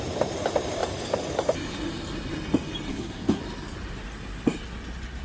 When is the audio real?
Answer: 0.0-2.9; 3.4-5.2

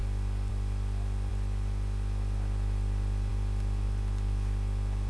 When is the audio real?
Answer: 0.0-5.1

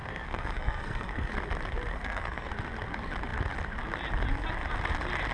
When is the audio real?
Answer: 1.3-1.9; 2.5-5.3

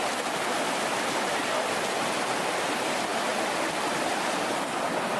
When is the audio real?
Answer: 0.0-5.2

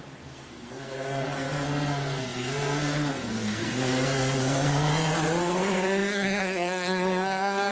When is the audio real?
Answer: 4.9-5.4

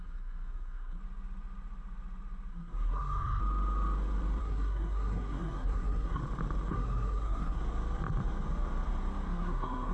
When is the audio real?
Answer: 1.0-2.5; 3.4-4.4; 6.2-6.7; 7.6-9.3

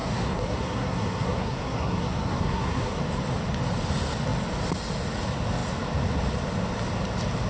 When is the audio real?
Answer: 3.0-7.5

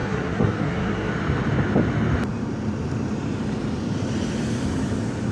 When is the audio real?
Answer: 1.1-5.3